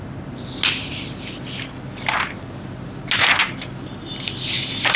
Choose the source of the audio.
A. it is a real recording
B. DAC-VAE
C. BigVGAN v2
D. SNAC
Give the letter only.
A